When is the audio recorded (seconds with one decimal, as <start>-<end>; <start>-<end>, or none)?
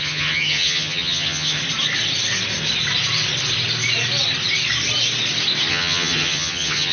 1.6-5.7